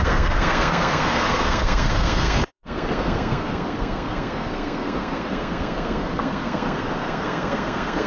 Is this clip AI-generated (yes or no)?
yes